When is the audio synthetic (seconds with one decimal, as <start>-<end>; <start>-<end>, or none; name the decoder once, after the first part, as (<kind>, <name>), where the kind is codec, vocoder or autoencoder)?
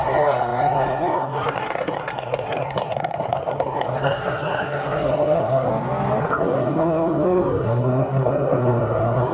0.0-5.7 (codec, SNAC); 6.2-9.3